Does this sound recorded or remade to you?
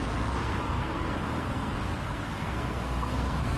remade